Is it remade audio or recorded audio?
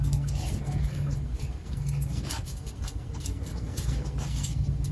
remade